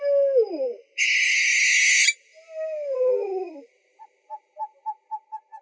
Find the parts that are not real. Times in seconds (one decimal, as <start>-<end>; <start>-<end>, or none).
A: none